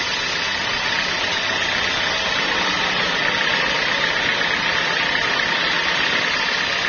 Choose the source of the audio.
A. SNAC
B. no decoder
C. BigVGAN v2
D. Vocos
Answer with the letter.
B